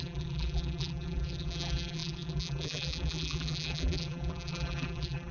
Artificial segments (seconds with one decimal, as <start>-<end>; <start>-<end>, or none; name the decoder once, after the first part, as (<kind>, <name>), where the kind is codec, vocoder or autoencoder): 0.0-5.3 (vocoder, BigVGAN v2)